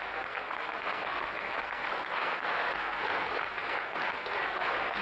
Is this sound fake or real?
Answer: fake